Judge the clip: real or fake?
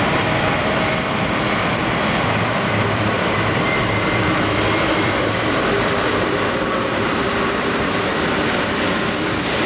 fake